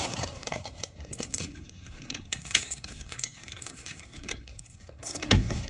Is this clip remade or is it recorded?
remade